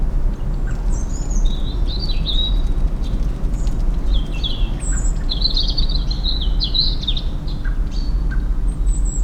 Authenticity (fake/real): real